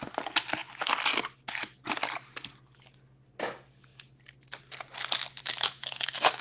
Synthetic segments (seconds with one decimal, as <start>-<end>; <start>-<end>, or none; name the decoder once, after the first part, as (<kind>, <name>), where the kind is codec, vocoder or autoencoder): 5.4-6.4 (autoencoder, DAC-VAE)